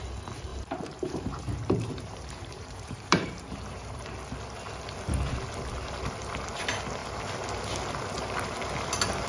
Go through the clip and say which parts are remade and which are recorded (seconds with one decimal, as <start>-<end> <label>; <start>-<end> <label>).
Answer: 0.0-0.5 recorded; 0.5-4.1 remade; 4.1-9.3 recorded